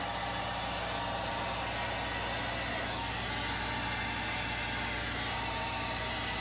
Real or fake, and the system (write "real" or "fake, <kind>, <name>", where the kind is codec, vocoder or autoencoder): real